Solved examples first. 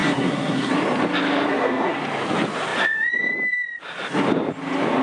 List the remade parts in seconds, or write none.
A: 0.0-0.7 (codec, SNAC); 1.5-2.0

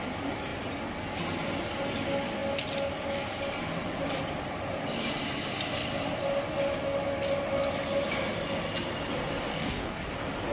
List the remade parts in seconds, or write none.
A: 9.5-10.0 (codec, DAC)

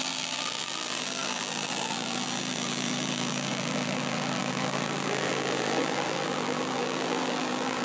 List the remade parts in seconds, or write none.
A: 0.0-7.8 (vocoder, BigVGAN v2)

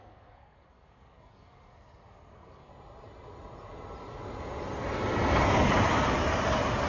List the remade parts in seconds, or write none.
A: 0.0-2.7 (codec, SNAC)

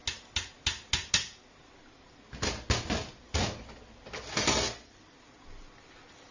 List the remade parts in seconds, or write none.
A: none

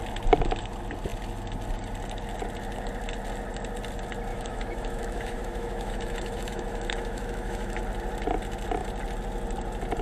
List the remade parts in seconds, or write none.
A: 4.3-7.8 (autoencoder, DAC-VAE)

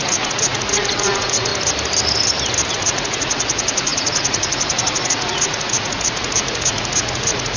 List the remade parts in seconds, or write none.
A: 0.0-1.5 (vocoder, Vocos); 2.7-7.6